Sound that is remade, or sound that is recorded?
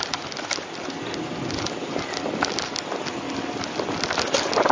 recorded